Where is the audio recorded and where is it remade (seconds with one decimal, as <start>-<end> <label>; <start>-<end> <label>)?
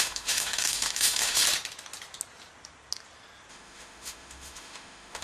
0.0-1.4 remade; 1.4-3.5 recorded; 3.5-5.2 remade